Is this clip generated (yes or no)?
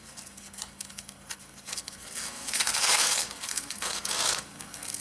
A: yes